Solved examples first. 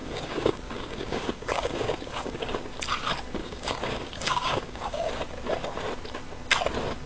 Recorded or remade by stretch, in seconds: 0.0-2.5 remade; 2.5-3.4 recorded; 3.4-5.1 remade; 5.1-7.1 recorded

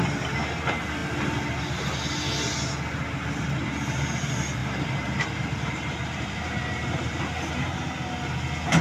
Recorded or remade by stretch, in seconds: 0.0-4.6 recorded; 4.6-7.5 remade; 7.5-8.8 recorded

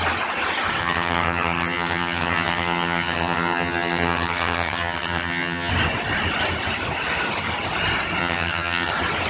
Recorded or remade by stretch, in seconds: 0.0-0.8 recorded; 0.8-5.7 remade; 5.7-8.2 recorded; 8.2-8.9 remade; 8.9-9.3 recorded